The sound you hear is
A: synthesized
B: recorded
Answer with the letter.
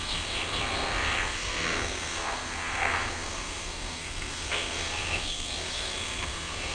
A